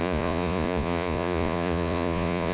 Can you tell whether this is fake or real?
fake